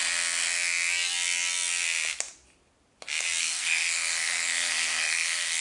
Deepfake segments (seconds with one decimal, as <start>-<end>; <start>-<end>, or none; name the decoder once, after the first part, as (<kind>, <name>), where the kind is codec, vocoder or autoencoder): 3.4-5.6 (codec, SNAC)